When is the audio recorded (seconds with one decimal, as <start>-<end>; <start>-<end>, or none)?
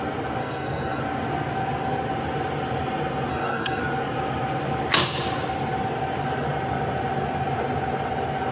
0.0-0.4; 1.0-3.3; 3.8-8.5